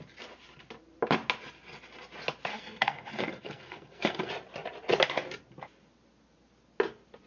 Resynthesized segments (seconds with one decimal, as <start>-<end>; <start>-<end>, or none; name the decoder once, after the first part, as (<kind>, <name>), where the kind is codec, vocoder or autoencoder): 2.5-4.3 (codec, SNAC)